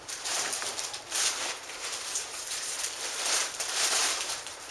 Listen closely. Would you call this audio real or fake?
fake